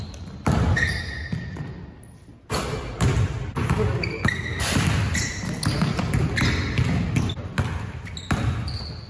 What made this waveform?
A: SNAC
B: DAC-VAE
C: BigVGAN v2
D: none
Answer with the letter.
D